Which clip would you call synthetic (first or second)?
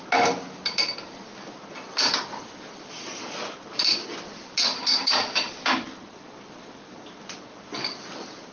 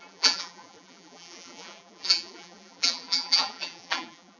second